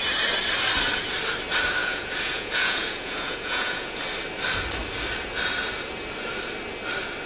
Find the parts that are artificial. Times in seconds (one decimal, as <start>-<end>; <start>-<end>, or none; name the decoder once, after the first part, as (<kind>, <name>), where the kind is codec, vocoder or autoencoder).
1.8-4.0 (vocoder, Vocos)